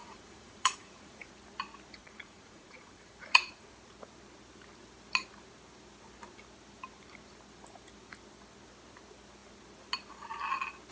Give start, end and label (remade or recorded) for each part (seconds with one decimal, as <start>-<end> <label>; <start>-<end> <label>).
0.0-1.3 remade; 1.3-2.0 recorded; 2.0-3.7 remade; 3.7-10.9 recorded

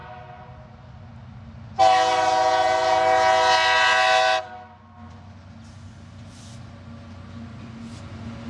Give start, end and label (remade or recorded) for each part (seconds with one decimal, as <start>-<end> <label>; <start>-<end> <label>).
0.0-8.5 recorded

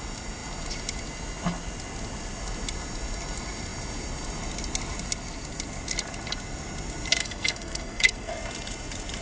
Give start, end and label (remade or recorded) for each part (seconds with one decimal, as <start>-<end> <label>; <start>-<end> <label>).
0.0-7.2 recorded; 7.2-8.3 remade; 8.3-9.2 recorded

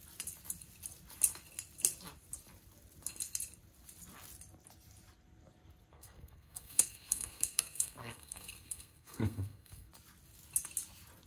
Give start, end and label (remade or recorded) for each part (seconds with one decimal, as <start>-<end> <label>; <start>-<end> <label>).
0.0-5.9 recorded; 5.9-9.9 remade; 9.9-11.3 recorded